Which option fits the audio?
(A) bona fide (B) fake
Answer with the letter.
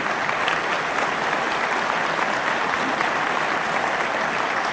A